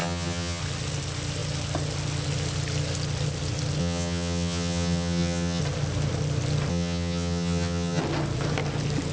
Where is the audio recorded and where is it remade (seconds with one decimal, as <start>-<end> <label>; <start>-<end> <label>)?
0.0-0.6 remade; 0.6-3.8 recorded; 3.8-5.6 remade; 5.6-6.7 recorded; 6.7-8.0 remade; 8.0-9.1 recorded